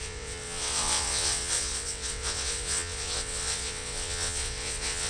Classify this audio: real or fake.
fake